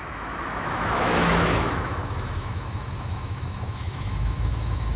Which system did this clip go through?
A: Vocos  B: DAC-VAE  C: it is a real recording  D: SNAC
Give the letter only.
B